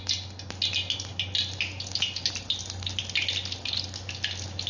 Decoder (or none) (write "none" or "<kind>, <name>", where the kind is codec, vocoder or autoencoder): none